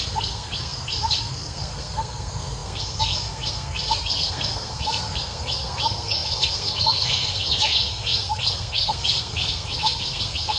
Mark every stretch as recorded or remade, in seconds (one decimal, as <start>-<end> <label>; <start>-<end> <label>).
0.0-10.6 remade